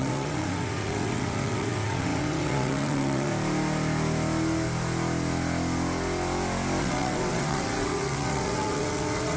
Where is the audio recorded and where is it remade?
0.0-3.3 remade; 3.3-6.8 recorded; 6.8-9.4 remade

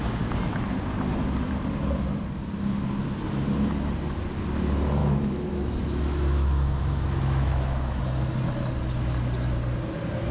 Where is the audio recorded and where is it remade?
0.0-5.0 recorded; 5.0-8.0 remade; 8.0-10.3 recorded

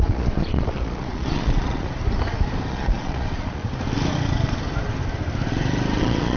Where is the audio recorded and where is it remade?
0.0-2.0 remade; 2.0-2.7 recorded; 2.7-3.6 remade; 3.6-6.0 recorded; 6.0-6.4 remade